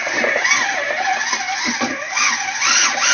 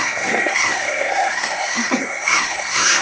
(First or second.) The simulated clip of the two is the second